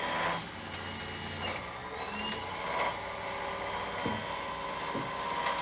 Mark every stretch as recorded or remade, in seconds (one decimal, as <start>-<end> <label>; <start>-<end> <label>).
0.0-5.6 recorded